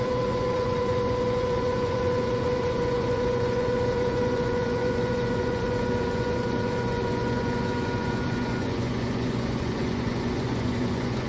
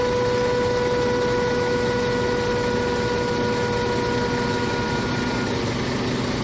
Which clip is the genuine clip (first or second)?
second